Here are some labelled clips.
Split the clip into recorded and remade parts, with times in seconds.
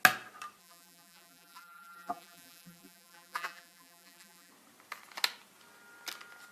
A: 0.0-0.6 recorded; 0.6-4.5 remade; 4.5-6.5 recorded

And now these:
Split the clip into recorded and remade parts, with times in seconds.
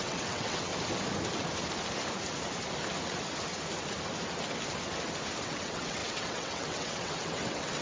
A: 0.0-0.7 remade; 0.7-5.4 recorded; 5.4-7.8 remade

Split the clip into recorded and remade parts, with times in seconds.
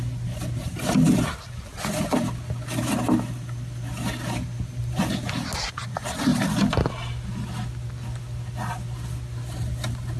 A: 0.0-10.2 recorded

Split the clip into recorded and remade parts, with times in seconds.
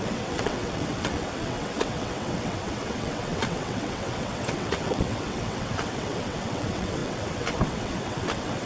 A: 0.0-8.7 remade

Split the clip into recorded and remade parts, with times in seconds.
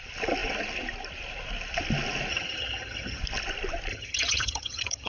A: 0.0-2.3 recorded; 2.3-3.2 remade; 3.2-3.9 recorded; 3.9-5.1 remade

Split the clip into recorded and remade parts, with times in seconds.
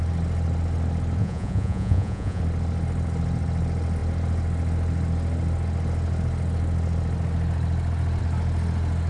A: 0.0-1.2 recorded; 1.2-2.4 remade; 2.4-9.1 recorded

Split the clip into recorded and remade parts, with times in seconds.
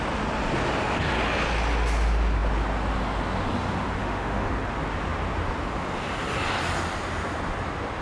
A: 0.0-4.0 recorded; 4.0-4.5 remade; 4.5-8.0 recorded